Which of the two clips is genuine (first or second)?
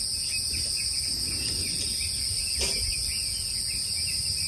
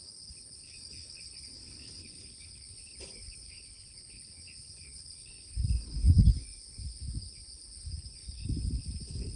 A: first